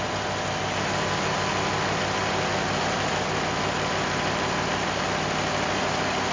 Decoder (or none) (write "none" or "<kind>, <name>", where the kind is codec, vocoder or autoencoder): none